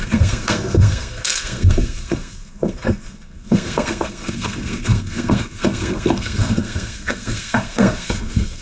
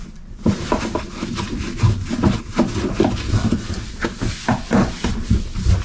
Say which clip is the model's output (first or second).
first